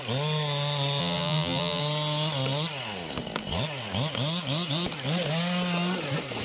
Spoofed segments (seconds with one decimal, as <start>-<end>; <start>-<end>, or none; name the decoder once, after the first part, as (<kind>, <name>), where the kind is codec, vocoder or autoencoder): 1.0-1.8 (vocoder, BigVGAN v2)